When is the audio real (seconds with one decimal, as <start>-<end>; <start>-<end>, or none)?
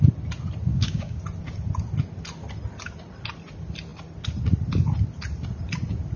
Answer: 0.0-0.7; 1.2-6.2